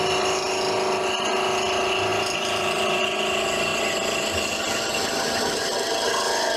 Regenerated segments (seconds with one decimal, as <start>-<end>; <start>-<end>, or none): 2.1-3.0; 3.7-4.9